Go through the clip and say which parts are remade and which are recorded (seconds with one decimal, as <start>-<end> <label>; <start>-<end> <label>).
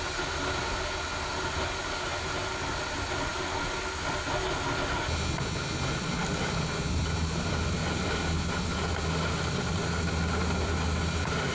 0.0-11.5 recorded